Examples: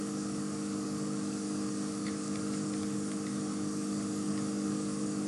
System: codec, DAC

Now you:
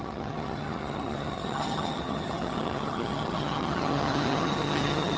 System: vocoder, HiFi-GAN